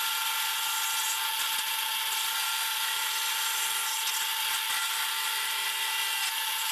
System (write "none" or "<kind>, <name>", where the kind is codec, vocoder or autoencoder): none